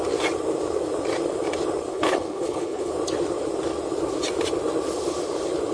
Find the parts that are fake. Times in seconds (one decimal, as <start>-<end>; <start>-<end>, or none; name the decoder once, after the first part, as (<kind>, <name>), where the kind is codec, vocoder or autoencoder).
1.9-2.9 (codec, HILCodec)